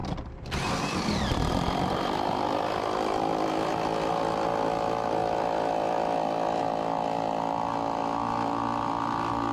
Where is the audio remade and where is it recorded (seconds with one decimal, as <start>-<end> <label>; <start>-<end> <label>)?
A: 0.0-4.1 remade; 4.1-5.2 recorded; 5.2-6.6 remade; 6.6-9.5 recorded